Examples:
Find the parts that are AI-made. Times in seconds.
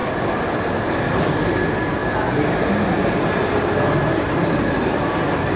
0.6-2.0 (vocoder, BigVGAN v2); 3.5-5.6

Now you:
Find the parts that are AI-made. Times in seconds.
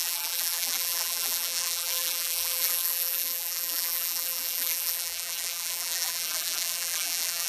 0.0-7.5 (vocoder, BigVGAN v2)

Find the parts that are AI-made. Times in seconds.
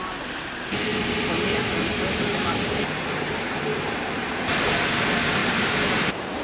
2.3-3.3 (vocoder, BigVGAN v2); 3.7-4.3; 5.4-6.4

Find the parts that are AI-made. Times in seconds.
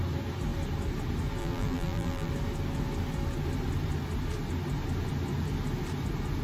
1.4-2.3 (vocoder, BigVGAN v2)